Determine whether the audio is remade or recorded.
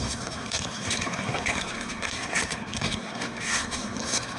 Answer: remade